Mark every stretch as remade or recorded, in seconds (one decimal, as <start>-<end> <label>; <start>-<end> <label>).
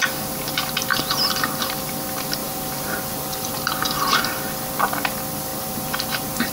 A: 0.0-2.4 recorded; 2.4-3.5 remade; 3.5-5.5 recorded; 5.5-6.5 remade